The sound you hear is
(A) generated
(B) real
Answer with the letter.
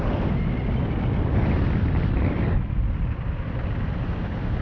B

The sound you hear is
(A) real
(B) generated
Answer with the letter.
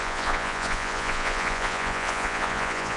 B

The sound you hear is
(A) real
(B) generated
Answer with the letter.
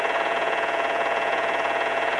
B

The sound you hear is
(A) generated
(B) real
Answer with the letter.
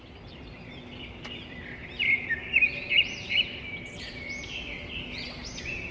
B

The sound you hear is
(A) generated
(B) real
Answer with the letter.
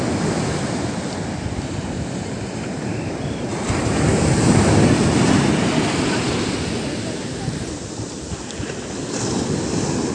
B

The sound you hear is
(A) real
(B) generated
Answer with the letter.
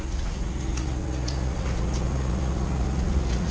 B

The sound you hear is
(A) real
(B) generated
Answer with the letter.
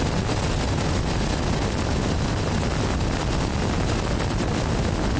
A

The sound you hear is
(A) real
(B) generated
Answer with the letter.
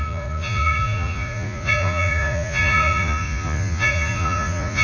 B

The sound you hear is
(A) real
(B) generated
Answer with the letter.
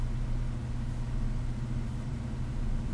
A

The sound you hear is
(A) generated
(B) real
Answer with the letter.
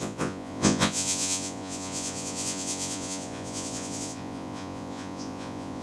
A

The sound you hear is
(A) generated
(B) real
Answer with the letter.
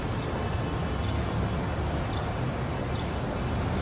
B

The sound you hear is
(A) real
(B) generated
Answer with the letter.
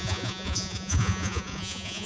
B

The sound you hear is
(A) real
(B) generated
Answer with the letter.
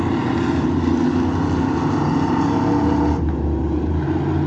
A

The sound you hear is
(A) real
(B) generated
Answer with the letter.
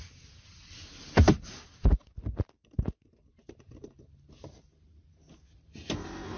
A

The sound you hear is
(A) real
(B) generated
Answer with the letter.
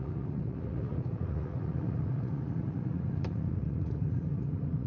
B